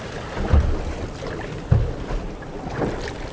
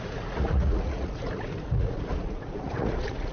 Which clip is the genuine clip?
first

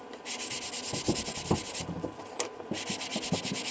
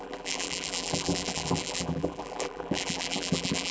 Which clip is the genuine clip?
first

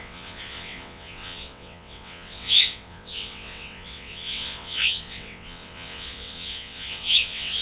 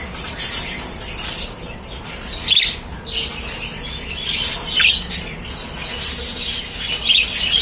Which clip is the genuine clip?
second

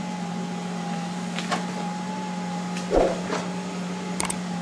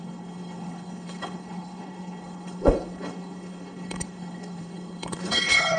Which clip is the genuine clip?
first